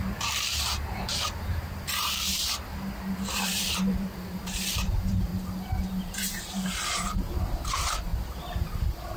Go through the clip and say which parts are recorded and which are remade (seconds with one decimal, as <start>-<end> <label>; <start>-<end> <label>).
0.0-5.3 remade; 5.3-6.0 recorded; 6.0-9.2 remade